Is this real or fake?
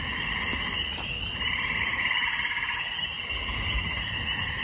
real